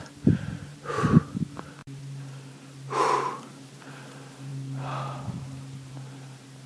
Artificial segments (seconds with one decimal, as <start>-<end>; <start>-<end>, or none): none